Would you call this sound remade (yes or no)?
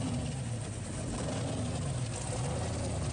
no